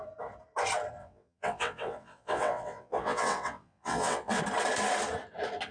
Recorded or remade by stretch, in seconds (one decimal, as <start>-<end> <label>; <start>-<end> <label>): 0.0-1.0 recorded; 1.0-4.4 remade; 4.4-5.7 recorded